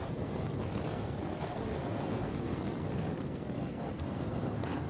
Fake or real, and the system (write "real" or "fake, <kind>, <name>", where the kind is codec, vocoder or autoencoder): fake, codec, SNAC